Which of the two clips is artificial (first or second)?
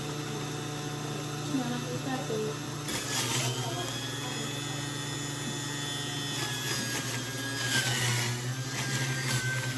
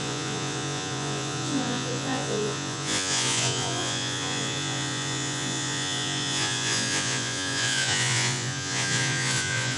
second